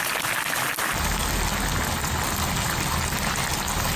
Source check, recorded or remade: recorded